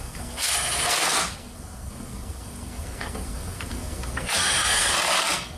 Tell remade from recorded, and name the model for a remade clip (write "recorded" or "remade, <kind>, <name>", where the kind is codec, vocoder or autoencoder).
remade, codec, SNAC